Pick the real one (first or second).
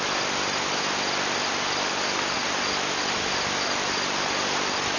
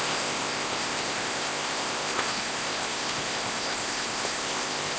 first